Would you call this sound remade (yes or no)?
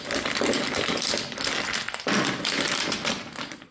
no